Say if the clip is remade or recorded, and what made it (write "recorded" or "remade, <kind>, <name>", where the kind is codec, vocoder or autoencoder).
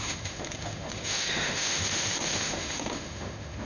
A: remade, autoencoder, DAC-VAE